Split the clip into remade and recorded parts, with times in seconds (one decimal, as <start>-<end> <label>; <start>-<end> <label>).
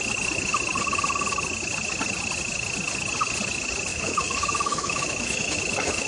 0.0-3.9 recorded; 3.9-6.1 remade